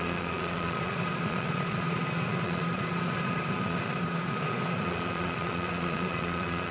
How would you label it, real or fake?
fake